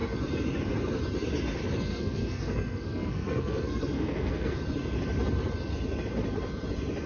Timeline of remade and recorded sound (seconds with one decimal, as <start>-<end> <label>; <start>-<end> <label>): 0.0-1.9 recorded; 1.9-4.6 remade; 4.6-7.1 recorded